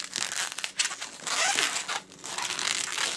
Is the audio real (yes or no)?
yes